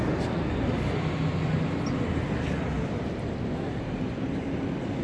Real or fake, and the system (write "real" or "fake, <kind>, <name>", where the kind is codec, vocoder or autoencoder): real